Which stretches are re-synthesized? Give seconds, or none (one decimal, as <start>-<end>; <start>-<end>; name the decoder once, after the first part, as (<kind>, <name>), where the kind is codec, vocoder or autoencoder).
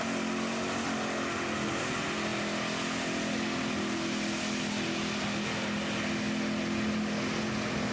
none